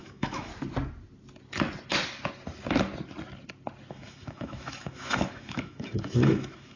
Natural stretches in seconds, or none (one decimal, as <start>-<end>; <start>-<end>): 0.5-3.9